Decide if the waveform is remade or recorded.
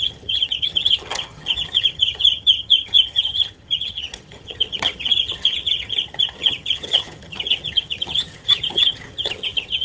remade